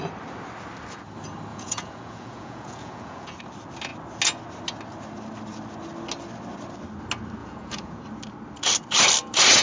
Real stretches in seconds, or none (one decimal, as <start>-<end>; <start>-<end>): 0.0-1.5; 3.4-7.4; 8.0-9.6